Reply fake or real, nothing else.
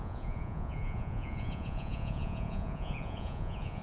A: fake